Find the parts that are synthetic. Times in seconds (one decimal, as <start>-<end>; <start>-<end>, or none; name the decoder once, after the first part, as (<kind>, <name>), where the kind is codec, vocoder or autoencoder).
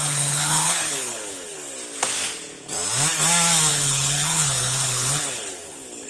0.0-1.6 (codec, HILCodec); 3.7-6.1